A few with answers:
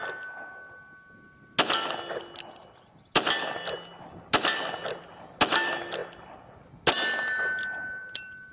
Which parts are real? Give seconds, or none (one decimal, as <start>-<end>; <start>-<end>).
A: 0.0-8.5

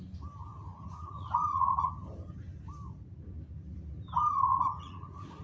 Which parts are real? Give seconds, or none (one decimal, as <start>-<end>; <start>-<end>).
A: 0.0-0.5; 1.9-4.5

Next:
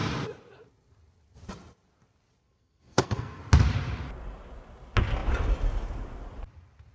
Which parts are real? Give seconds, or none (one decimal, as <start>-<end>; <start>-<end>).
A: 0.0-2.4; 3.4-6.9